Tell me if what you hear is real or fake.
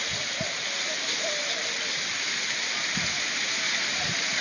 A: real